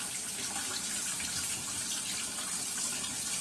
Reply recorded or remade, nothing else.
recorded